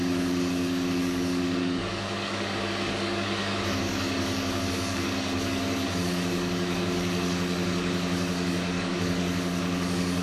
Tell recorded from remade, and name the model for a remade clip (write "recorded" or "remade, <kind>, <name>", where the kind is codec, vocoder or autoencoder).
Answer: remade, codec, DAC